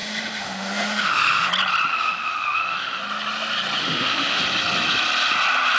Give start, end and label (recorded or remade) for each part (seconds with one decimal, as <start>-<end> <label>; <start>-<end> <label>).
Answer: 0.0-1.5 remade; 1.5-1.9 recorded; 1.9-3.0 remade; 3.0-3.8 recorded; 3.8-4.4 remade; 4.4-5.8 recorded